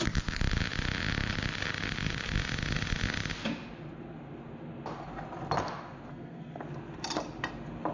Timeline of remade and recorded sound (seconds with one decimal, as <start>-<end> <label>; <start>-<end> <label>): 0.0-6.1 recorded; 6.1-6.6 remade; 6.6-7.9 recorded